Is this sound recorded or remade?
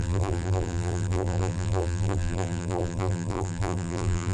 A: remade